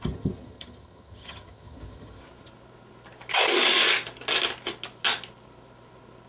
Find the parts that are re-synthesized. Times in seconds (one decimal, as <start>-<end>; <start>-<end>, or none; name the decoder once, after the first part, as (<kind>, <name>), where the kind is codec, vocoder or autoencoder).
0.0-2.2 (vocoder, HiFi-GAN)